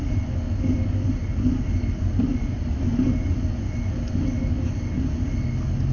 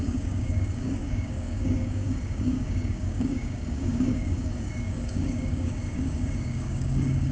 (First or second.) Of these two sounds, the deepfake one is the second